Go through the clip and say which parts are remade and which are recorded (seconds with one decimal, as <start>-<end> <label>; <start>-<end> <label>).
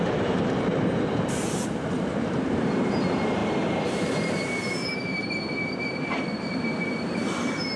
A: 0.0-7.8 remade